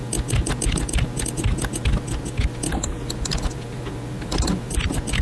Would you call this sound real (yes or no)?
yes